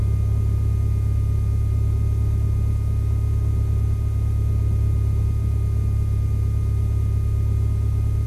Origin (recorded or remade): recorded